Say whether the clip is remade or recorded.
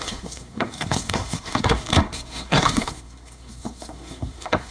remade